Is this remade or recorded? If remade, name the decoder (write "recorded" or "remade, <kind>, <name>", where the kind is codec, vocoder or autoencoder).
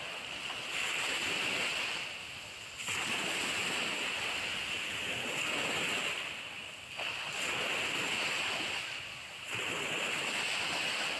recorded